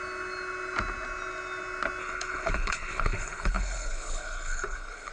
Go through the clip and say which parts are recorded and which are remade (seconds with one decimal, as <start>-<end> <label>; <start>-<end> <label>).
0.0-2.0 recorded; 2.0-5.1 remade

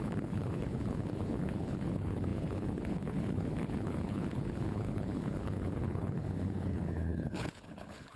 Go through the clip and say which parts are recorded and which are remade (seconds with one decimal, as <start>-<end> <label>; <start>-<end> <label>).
0.0-8.2 remade

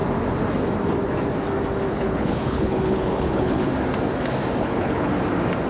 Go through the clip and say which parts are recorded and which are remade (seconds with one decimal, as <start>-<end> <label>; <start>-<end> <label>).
0.0-1.9 recorded; 1.9-3.7 remade; 3.7-4.6 recorded; 4.6-5.1 remade; 5.1-5.7 recorded

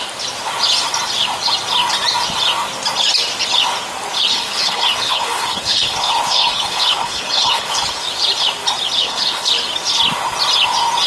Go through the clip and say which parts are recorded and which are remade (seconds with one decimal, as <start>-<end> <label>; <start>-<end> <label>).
0.0-4.3 recorded; 4.3-7.8 remade; 7.8-9.0 recorded; 9.0-9.5 remade; 9.5-11.1 recorded

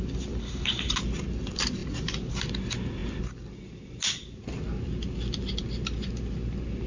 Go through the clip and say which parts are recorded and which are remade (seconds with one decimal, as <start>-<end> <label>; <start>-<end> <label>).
0.0-0.4 recorded; 0.4-1.0 remade; 1.0-6.9 recorded

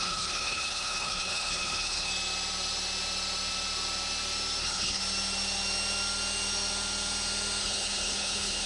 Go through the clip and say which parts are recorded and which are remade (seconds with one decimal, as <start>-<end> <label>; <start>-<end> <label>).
0.0-2.1 remade; 2.1-4.6 recorded; 4.6-5.0 remade; 5.0-7.6 recorded; 7.6-8.7 remade

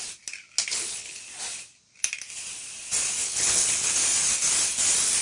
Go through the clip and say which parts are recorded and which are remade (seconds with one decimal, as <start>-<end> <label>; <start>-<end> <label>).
0.0-0.7 recorded; 0.7-1.2 remade; 1.2-3.2 recorded; 3.2-3.9 remade; 3.9-5.2 recorded